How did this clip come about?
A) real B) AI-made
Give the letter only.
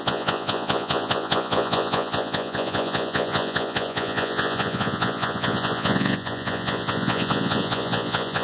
B